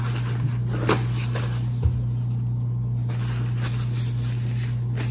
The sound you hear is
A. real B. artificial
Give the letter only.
A